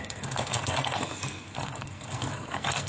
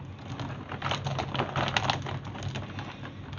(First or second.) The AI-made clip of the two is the first